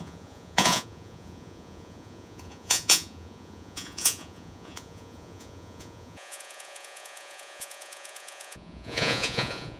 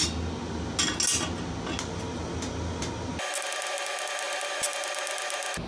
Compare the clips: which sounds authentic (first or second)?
second